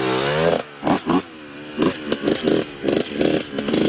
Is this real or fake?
real